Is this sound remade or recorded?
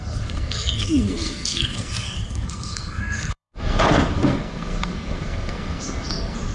remade